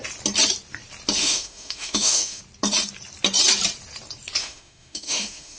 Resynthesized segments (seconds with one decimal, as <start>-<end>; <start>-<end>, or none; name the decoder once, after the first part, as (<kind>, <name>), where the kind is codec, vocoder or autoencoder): 1.2-2.4 (autoencoder, DAC-VAE); 4.4-5.6